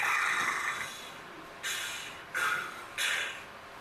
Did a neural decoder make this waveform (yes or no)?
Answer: no